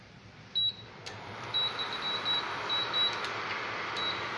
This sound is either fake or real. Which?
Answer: real